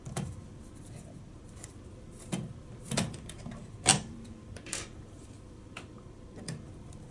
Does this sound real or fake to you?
fake